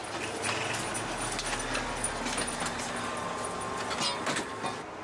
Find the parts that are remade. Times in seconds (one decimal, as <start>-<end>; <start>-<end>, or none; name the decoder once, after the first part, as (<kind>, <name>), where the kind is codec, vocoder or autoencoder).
none